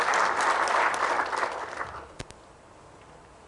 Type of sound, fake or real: real